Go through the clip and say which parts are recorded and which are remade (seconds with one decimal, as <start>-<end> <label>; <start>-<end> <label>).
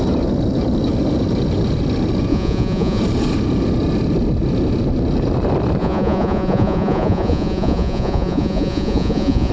0.0-2.3 recorded; 2.3-3.0 remade; 3.0-5.8 recorded; 5.8-9.5 remade